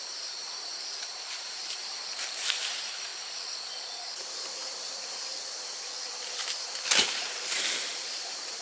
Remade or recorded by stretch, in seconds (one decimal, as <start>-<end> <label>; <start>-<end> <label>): 0.0-3.1 remade; 3.1-3.8 recorded; 3.8-5.3 remade; 5.3-6.3 recorded; 6.3-8.6 remade